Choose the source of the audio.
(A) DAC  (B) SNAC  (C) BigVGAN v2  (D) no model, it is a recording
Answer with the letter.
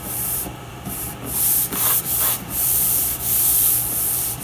C